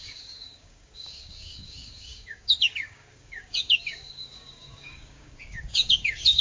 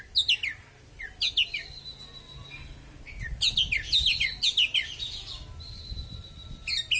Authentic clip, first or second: second